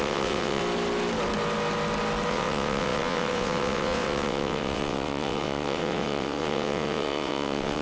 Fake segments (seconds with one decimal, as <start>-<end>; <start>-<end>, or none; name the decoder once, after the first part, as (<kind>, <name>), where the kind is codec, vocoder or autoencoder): 0.0-0.6 (vocoder, WaveNeXt); 2.3-7.8